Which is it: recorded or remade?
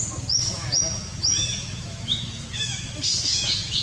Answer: remade